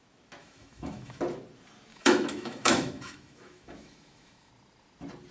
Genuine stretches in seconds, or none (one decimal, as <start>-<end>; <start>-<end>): 0.0-0.4; 1.2-1.9; 4.5-5.3